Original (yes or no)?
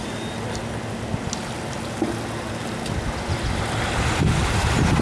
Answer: yes